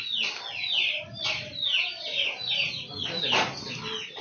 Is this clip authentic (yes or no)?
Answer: yes